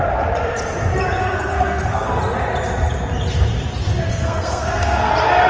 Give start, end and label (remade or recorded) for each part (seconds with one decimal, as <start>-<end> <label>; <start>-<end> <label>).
0.0-1.2 recorded; 1.2-2.2 remade; 2.2-4.1 recorded; 4.1-5.1 remade; 5.1-5.5 recorded